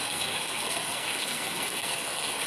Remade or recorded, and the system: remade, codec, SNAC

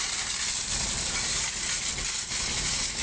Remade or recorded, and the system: recorded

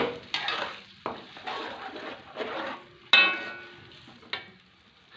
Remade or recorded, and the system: recorded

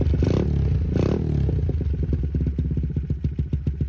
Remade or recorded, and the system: recorded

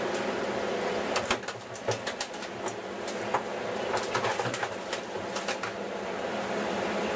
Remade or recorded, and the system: recorded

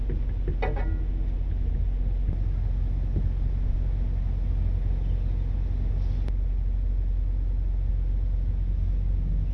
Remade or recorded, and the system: recorded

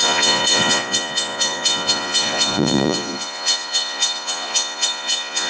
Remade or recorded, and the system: remade, vocoder, Vocos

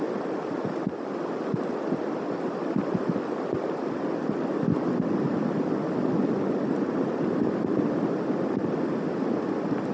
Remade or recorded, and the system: recorded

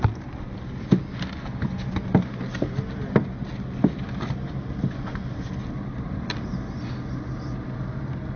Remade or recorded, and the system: recorded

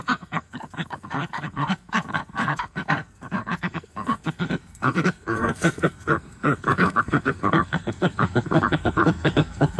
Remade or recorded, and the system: remade, codec, SNAC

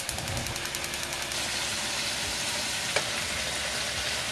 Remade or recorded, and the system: recorded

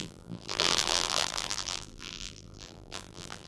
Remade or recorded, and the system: remade, vocoder, BigVGAN v2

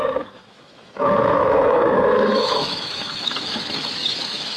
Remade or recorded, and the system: remade, autoencoder, DAC-VAE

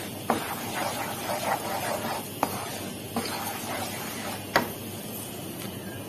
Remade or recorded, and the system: recorded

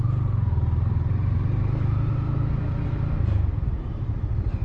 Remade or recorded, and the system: recorded